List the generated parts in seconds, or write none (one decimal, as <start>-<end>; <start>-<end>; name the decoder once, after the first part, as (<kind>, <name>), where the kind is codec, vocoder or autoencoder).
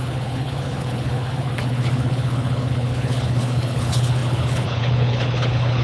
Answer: 0.0-5.8 (codec, HILCodec)